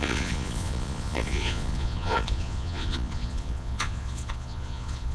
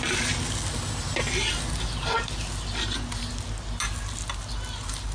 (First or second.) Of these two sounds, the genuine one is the second